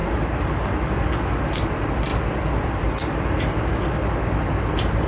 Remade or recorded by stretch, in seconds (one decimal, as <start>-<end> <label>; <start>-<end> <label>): 0.0-2.1 recorded; 2.1-3.7 remade; 3.7-5.1 recorded